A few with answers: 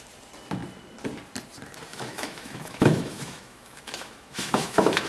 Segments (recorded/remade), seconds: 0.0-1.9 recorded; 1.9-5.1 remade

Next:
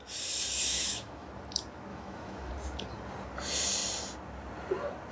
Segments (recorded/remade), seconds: 0.0-0.7 recorded; 0.7-1.3 remade; 1.3-1.9 recorded; 1.9-2.5 remade; 2.5-5.1 recorded

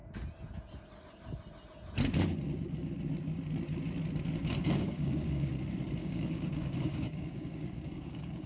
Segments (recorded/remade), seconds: 0.0-4.4 recorded; 4.4-5.5 remade; 5.5-6.0 recorded; 6.0-8.5 remade

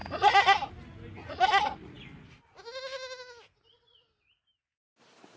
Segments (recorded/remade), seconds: 0.0-0.7 remade; 0.7-1.2 recorded; 1.2-2.0 remade; 2.0-5.4 recorded

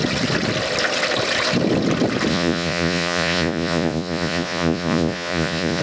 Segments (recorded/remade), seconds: 0.0-2.3 recorded; 2.3-5.8 remade

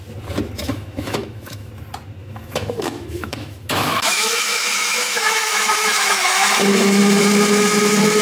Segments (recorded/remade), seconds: 0.0-0.6 recorded; 0.6-1.7 remade; 1.7-2.2 recorded; 2.2-7.0 remade; 7.0-8.2 recorded

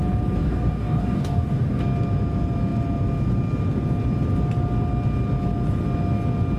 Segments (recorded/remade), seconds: 0.0-0.4 recorded; 0.4-1.8 remade; 1.8-6.6 recorded

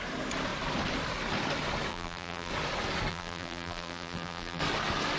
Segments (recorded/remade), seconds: 0.0-1.9 recorded; 1.9-2.5 remade; 2.5-3.1 recorded; 3.1-4.6 remade; 4.6-5.2 recorded